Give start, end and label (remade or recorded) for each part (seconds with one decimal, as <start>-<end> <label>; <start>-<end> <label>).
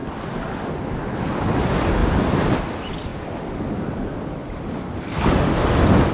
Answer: 0.0-0.6 remade; 0.6-2.0 recorded; 2.0-2.6 remade; 2.6-6.1 recorded